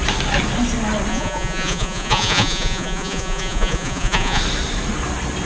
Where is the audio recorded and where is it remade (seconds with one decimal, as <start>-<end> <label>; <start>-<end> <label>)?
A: 0.0-1.1 recorded; 1.1-4.4 remade; 4.4-5.5 recorded